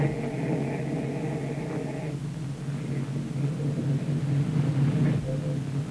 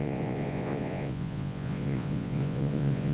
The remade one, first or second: second